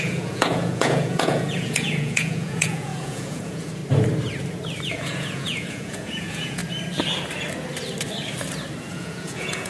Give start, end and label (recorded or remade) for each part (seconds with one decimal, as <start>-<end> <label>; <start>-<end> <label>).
0.0-3.8 remade; 3.8-4.9 recorded; 4.9-6.6 remade; 6.6-8.8 recorded; 8.8-9.7 remade